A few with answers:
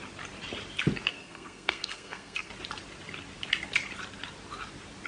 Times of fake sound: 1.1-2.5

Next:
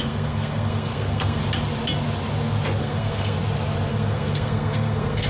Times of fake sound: 0.0-1.4; 2.8-3.4; 3.9-5.3

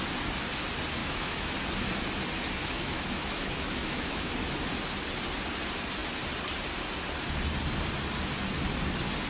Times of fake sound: 1.0-1.5; 2.6-4.3